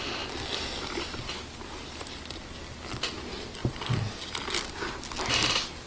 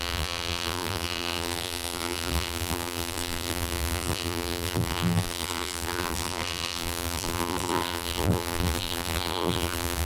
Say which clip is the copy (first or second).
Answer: second